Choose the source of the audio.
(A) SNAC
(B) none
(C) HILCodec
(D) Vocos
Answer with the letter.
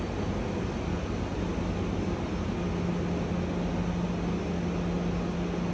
B